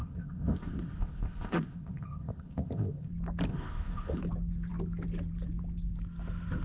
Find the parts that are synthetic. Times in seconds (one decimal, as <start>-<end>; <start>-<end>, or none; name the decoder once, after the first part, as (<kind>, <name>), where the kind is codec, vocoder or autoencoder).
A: 0.0-3.1 (codec, ZipCodec); 3.5-4.2